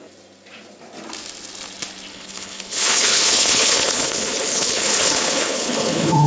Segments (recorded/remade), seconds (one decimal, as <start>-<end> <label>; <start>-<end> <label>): 0.0-2.1 recorded; 2.1-6.3 remade